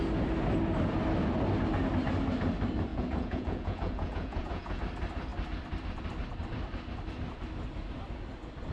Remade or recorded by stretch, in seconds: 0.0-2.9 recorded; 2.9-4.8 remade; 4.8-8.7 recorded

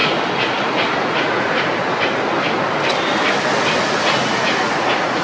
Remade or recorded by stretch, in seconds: 0.0-1.0 recorded; 1.0-1.7 remade; 1.7-4.7 recorded; 4.7-5.2 remade